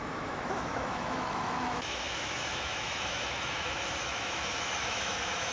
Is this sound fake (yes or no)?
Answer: yes